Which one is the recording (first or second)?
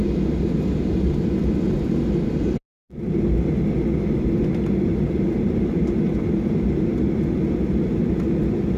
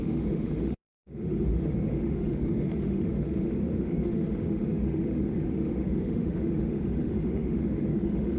first